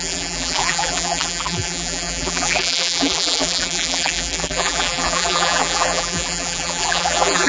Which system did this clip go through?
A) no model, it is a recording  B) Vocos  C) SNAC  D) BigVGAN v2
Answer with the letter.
D